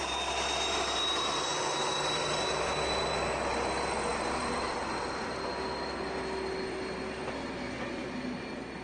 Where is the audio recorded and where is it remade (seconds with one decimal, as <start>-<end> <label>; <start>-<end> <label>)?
0.0-4.1 recorded; 4.1-5.3 remade; 5.3-8.8 recorded